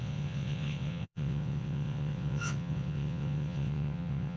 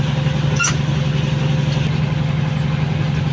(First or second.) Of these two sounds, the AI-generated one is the first